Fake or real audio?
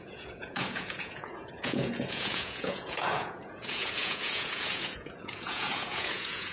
fake